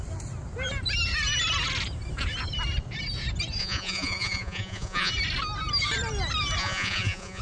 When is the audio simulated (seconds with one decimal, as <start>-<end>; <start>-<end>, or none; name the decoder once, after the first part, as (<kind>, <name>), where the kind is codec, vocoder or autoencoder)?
3.6-5.1 (vocoder, Vocos); 6.6-7.4